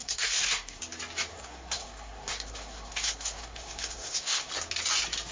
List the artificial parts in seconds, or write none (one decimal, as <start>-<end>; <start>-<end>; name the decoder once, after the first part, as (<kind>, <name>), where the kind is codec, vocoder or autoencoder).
0.0-0.8 (codec, SNAC); 1.3-4.5